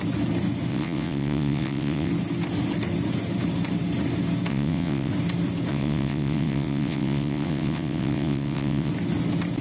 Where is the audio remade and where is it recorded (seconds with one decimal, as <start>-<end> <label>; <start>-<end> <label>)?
0.0-0.7 recorded; 0.7-2.1 remade; 2.1-4.5 recorded; 4.5-5.1 remade; 5.1-5.7 recorded; 5.7-8.9 remade; 8.9-9.6 recorded